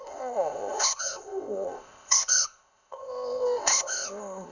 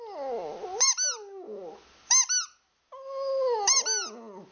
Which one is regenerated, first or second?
first